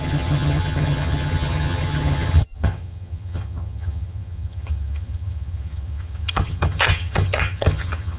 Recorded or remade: remade